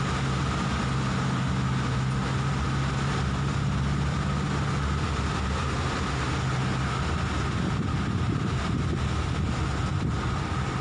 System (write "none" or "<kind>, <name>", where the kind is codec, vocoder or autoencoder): none